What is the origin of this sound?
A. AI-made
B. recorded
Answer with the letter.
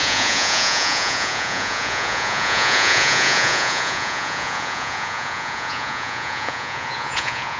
A